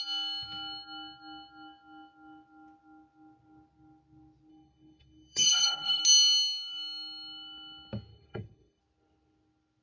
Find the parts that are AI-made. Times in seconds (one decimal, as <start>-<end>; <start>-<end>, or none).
4.5-6.0; 8.1-8.8